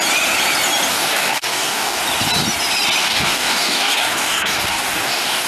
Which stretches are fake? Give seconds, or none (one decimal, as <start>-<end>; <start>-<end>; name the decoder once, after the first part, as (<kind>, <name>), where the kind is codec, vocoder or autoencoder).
0.9-2.0 (codec, DAC); 3.0-5.5